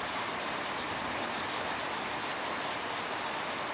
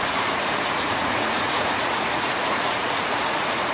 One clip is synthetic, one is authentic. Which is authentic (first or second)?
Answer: first